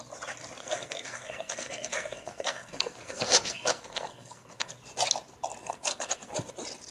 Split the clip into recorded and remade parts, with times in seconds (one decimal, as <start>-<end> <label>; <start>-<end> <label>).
0.0-0.6 recorded; 0.6-4.7 remade; 4.7-5.6 recorded; 5.6-6.3 remade; 6.3-6.9 recorded